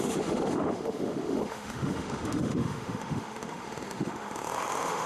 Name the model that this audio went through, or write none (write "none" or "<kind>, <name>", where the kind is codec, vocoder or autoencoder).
autoencoder, DAC-VAE